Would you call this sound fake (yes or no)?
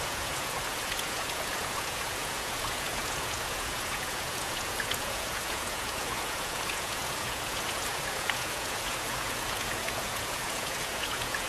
yes